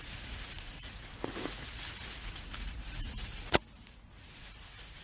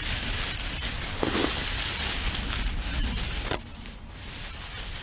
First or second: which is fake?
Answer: first